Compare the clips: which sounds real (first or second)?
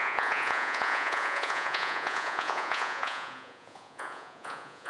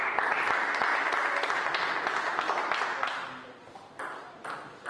second